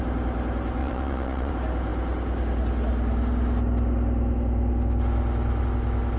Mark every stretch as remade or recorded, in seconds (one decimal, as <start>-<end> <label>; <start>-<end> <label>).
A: 0.0-0.8 recorded; 0.8-1.5 remade; 1.5-6.2 recorded